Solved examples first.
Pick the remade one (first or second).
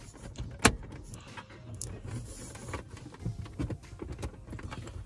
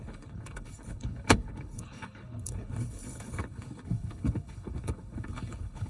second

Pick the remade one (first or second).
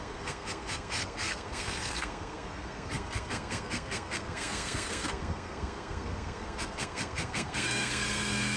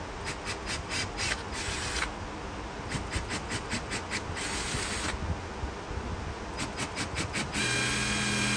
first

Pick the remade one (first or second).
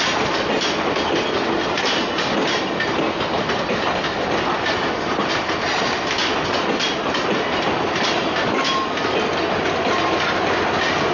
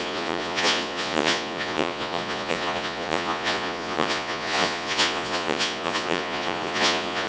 second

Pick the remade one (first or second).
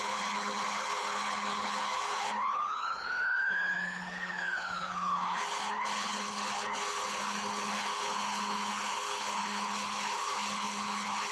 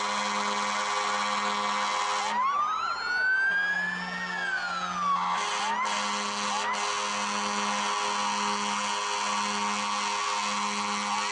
first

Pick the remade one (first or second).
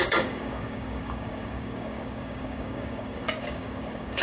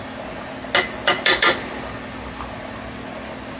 first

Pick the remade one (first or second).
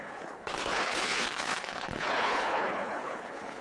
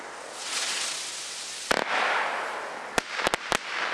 first